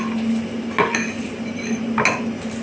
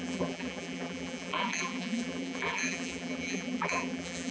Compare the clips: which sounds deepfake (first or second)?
second